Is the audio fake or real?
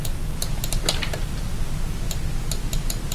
real